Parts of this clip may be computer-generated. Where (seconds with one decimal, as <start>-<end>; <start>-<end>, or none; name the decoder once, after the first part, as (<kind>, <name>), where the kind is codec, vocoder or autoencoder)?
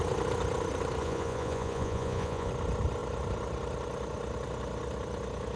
1.0-2.5 (vocoder, Vocos)